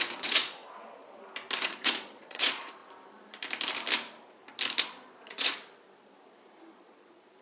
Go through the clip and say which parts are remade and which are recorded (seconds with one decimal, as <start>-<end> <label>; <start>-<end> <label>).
0.0-0.6 remade; 0.6-1.7 recorded; 1.7-2.8 remade; 2.8-4.8 recorded; 4.8-5.5 remade; 5.5-6.7 recorded; 6.7-7.4 remade